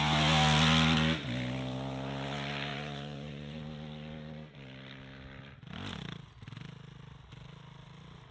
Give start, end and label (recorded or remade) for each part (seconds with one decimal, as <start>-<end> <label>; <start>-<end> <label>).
0.0-2.7 recorded; 2.7-3.6 remade; 3.6-8.3 recorded